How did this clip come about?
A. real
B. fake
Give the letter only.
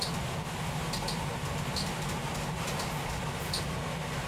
A